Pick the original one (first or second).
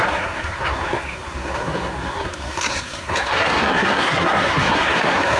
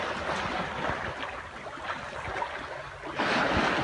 second